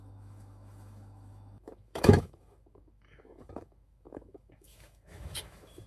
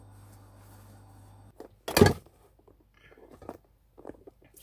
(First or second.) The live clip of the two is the second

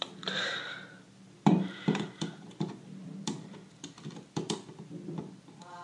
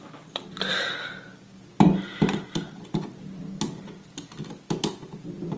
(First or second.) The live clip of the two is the second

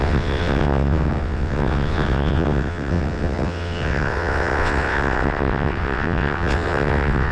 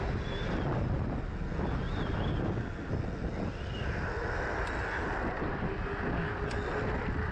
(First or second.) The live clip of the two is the second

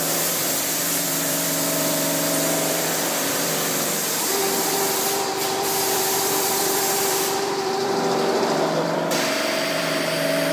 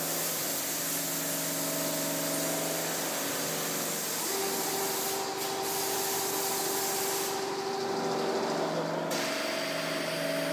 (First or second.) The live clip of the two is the second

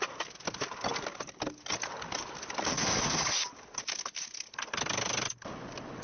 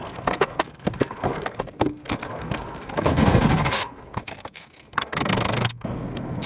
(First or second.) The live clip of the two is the first